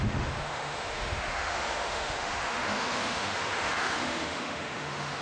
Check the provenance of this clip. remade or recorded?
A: remade